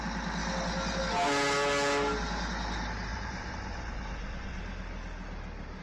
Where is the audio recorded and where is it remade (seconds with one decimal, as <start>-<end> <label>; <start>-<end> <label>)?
0.0-3.1 recorded; 3.1-4.6 remade; 4.6-5.8 recorded